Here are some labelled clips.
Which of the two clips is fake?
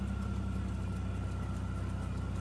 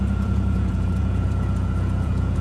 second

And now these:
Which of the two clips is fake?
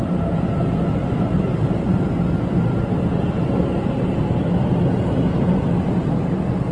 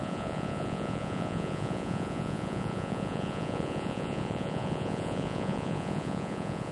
second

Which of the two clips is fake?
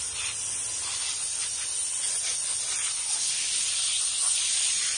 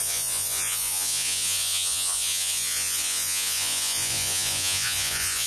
second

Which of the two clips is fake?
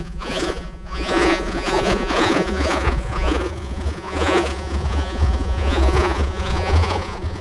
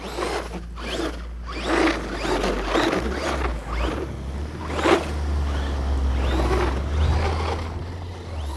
first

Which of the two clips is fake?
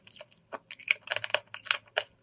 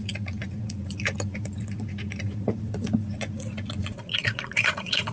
second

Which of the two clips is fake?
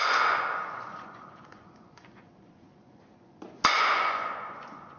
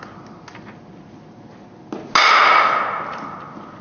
first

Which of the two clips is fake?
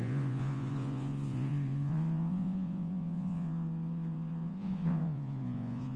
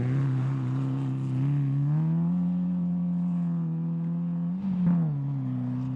first